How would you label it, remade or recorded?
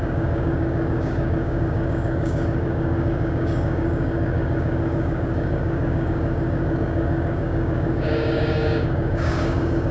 remade